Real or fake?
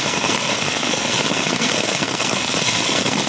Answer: fake